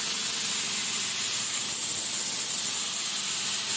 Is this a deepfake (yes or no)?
no